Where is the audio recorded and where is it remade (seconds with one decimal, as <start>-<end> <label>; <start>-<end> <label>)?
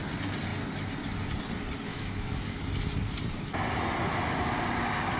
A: 0.0-1.9 recorded; 1.9-2.6 remade; 2.6-5.2 recorded